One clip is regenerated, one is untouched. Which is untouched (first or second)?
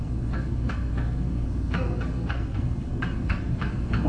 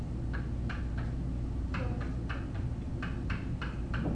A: second